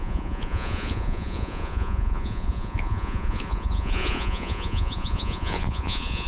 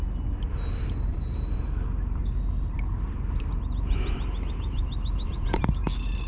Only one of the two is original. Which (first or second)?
second